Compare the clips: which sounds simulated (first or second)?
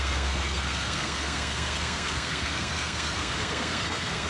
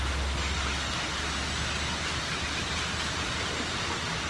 first